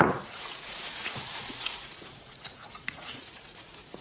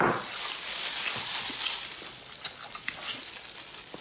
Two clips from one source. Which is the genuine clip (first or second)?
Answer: second